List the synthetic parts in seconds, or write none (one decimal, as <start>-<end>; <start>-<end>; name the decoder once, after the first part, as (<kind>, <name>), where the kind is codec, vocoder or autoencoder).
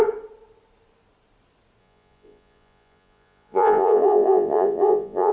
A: 1.8-5.3 (vocoder, Vocos)